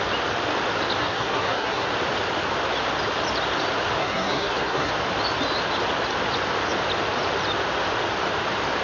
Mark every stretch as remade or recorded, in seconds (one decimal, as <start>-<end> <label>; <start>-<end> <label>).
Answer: 0.0-1.0 recorded; 1.0-1.9 remade; 1.9-4.0 recorded; 4.0-4.9 remade; 4.9-8.8 recorded